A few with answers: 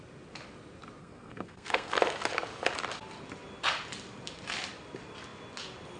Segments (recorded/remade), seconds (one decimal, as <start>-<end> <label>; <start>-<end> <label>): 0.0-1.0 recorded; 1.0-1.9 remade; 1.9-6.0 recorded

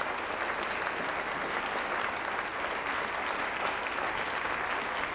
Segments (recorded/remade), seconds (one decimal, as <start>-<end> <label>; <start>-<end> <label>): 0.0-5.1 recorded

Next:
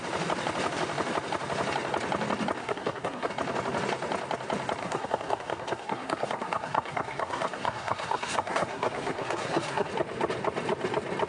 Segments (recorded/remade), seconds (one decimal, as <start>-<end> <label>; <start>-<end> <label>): 0.0-2.6 recorded; 2.6-3.3 remade; 3.3-4.8 recorded; 4.8-9.9 remade; 9.9-11.3 recorded